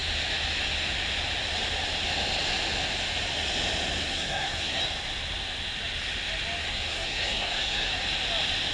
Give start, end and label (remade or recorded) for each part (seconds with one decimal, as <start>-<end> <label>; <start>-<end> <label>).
0.0-4.0 recorded; 4.0-4.8 remade; 4.8-6.6 recorded; 6.6-7.9 remade; 7.9-8.7 recorded